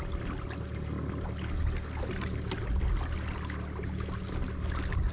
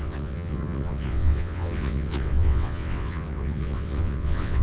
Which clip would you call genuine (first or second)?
first